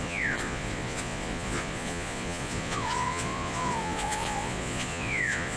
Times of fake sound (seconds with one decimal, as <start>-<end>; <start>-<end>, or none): 0.0-5.6